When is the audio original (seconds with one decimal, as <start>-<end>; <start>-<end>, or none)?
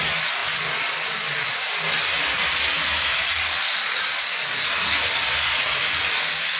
0.0-6.6